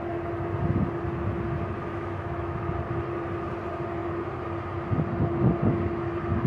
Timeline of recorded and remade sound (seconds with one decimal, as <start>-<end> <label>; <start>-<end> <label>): 0.0-1.9 recorded; 1.9-2.7 remade; 2.7-6.5 recorded